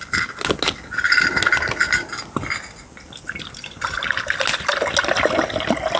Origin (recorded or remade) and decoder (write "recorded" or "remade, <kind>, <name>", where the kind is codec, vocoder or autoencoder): recorded